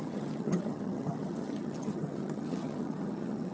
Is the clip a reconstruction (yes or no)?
yes